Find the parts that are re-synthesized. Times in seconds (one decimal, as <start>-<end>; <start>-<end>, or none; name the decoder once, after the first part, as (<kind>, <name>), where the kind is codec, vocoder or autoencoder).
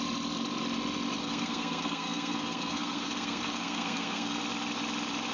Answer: 1.2-4.4 (codec, SNAC)